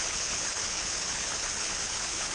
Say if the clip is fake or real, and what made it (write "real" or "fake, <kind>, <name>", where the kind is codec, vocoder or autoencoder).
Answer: fake, codec, HILCodec